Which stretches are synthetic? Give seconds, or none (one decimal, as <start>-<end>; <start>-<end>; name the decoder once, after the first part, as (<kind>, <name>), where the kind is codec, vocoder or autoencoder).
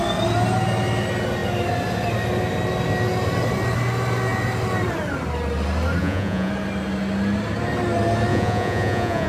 6.0-6.5 (vocoder, Vocos); 8.3-9.3